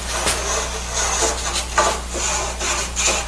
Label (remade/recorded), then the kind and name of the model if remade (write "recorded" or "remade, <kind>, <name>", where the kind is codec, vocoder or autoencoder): recorded